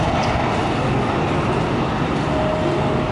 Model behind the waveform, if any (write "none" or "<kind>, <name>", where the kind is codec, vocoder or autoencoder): none